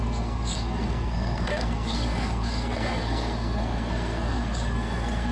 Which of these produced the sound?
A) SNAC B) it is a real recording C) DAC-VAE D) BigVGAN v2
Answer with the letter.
A